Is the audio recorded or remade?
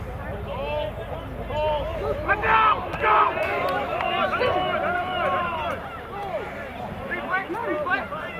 recorded